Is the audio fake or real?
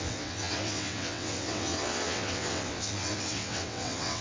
fake